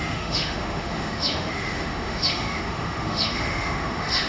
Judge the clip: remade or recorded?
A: remade